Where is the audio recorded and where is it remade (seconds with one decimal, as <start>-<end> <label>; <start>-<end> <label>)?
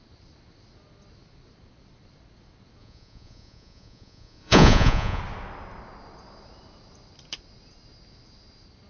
0.0-2.8 recorded; 2.8-5.2 remade; 5.2-8.9 recorded